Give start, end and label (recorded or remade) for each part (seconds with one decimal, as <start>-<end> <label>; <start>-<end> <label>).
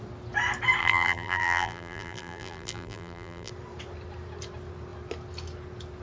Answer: 0.0-0.8 recorded; 0.8-3.5 remade; 3.5-6.0 recorded